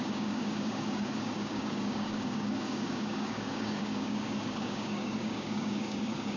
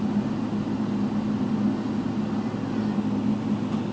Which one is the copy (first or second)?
first